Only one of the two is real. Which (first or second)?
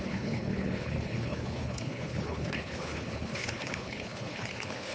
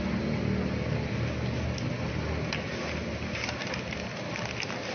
second